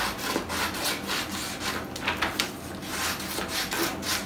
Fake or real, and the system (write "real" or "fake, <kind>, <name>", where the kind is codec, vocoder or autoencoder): real